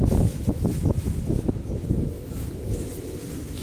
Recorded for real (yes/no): no